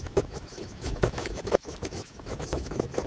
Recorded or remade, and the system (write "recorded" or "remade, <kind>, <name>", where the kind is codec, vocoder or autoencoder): remade, autoencoder, DAC-VAE